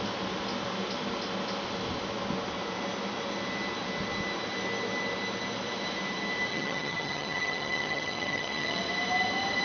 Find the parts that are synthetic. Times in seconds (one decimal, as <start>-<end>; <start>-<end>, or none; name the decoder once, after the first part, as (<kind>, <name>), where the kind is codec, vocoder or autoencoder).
6.5-8.8 (vocoder, HiFi-GAN)